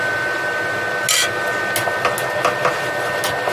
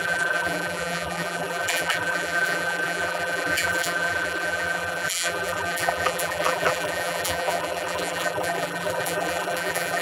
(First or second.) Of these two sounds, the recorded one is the first